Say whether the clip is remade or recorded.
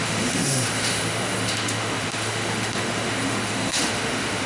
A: remade